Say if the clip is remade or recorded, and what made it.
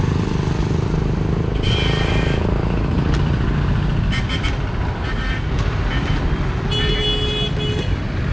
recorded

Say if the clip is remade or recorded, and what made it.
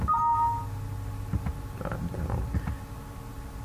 recorded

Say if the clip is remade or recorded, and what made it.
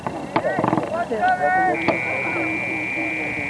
recorded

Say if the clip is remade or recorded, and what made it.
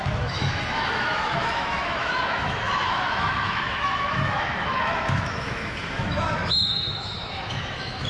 remade, autoencoder, DAC-VAE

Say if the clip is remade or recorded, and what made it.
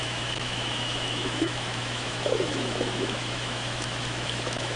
remade, autoencoder, DAC-VAE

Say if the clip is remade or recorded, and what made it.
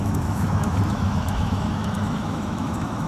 remade, autoencoder, DAC-VAE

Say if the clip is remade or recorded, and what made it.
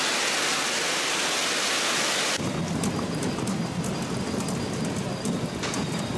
recorded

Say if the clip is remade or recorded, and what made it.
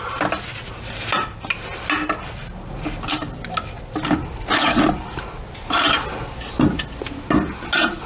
recorded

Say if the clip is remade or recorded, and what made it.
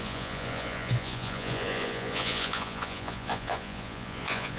remade, vocoder, Vocos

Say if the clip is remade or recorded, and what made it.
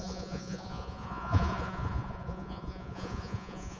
remade, vocoder, Vocos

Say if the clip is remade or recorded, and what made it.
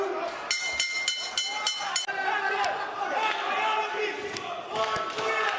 recorded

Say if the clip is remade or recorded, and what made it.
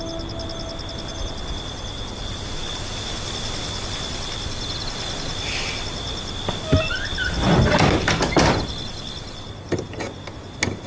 recorded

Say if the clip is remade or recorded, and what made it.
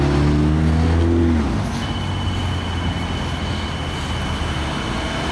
recorded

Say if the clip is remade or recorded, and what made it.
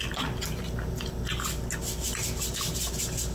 recorded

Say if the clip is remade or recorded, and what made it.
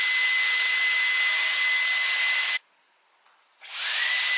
recorded